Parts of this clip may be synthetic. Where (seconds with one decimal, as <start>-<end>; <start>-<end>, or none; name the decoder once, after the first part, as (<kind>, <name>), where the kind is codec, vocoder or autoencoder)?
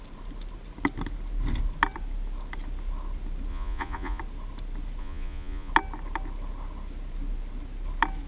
3.5-4.2 (vocoder, Vocos); 5.0-5.7